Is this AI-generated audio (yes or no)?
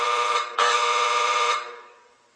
yes